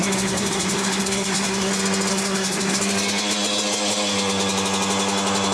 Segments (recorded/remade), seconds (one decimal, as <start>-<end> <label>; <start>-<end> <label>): 0.0-1.7 remade; 1.7-2.1 recorded; 2.1-2.8 remade; 2.8-5.5 recorded